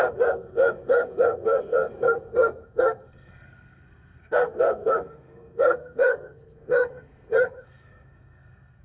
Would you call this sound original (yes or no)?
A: no